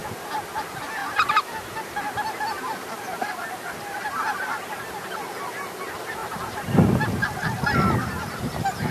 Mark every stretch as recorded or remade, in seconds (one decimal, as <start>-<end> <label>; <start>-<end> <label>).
0.0-1.0 recorded; 1.0-5.8 remade; 5.8-6.2 recorded; 6.2-7.6 remade; 7.6-8.9 recorded